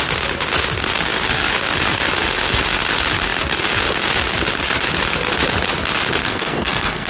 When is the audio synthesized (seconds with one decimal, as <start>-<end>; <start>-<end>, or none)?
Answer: 6.2-7.1